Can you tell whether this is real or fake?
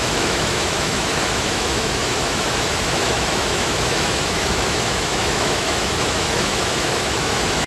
fake